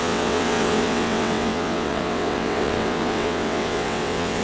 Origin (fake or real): fake